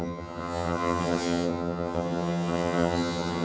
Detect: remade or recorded remade